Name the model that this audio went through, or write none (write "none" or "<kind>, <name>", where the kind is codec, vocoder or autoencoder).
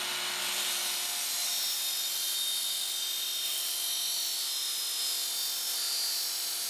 none